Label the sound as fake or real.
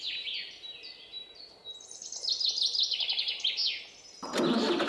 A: real